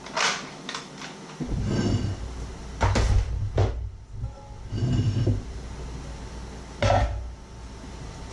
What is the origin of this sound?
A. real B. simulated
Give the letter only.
A